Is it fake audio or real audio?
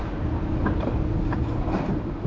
real